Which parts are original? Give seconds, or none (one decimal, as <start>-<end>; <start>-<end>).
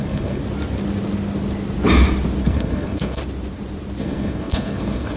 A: 0.4-2.4; 3.2-4.0